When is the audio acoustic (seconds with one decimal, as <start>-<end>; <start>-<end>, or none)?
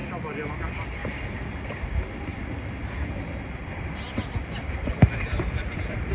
1.0-1.7